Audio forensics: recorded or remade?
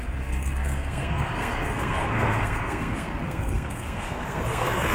remade